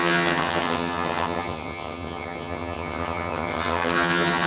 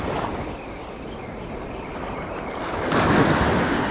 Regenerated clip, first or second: first